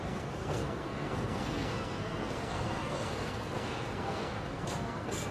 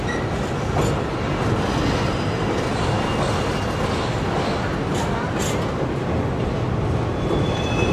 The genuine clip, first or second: second